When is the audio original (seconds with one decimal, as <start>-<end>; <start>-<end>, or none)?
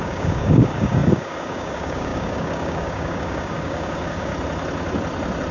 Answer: 4.3-5.5